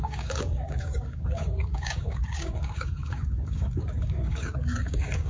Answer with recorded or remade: remade